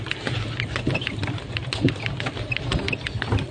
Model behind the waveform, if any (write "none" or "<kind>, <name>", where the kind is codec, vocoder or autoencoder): none